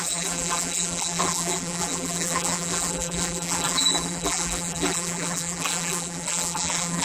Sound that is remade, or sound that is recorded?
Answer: remade